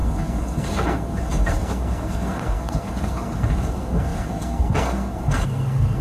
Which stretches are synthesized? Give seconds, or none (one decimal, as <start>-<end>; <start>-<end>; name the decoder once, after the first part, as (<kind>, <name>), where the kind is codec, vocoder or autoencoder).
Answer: 0.0-6.0 (codec, SNAC)